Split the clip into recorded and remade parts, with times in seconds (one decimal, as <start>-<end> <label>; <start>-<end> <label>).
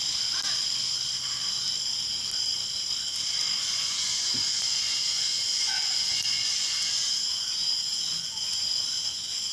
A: 0.0-3.6 recorded; 3.6-9.5 remade